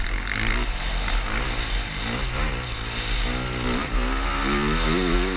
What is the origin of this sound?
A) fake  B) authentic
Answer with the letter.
B